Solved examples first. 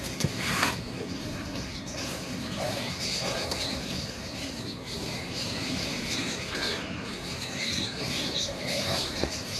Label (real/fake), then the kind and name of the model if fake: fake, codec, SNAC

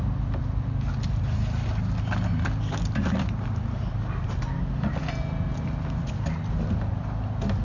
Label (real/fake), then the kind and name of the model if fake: real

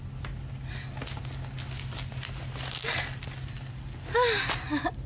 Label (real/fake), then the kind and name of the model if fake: real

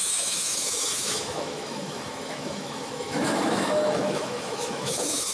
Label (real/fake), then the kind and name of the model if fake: fake, autoencoder, DAC-VAE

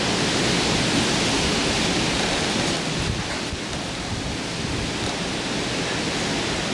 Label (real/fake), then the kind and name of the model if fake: real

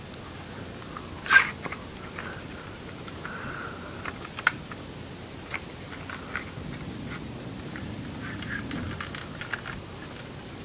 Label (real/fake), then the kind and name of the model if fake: real